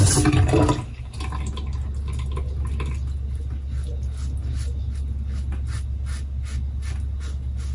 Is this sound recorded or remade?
recorded